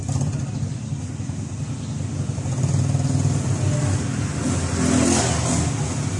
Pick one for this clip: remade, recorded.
recorded